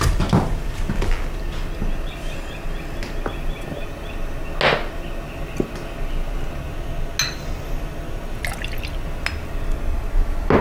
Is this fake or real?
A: real